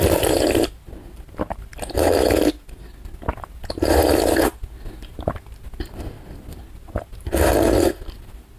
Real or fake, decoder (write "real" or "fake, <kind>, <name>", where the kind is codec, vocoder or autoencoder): real